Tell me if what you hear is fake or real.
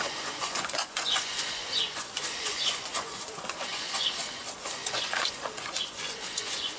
fake